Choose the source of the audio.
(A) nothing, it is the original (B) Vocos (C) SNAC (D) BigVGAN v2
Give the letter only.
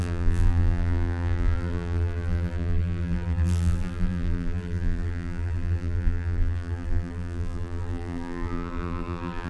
D